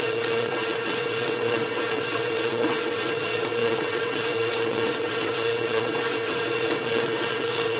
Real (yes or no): no